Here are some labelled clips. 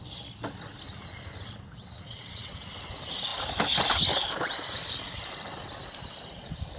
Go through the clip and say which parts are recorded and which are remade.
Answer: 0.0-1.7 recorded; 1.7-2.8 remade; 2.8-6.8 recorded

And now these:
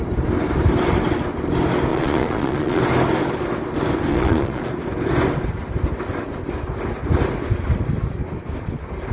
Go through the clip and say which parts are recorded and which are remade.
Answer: 0.0-1.9 recorded; 1.9-2.8 remade; 2.8-4.1 recorded; 4.1-4.6 remade; 4.6-9.1 recorded